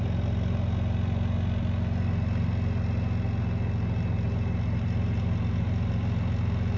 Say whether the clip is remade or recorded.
recorded